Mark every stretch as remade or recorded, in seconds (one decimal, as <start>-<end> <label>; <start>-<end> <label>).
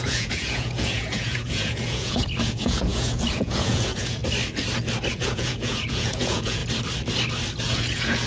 0.0-4.2 remade; 4.2-5.1 recorded; 5.1-6.6 remade; 6.6-7.6 recorded; 7.6-8.3 remade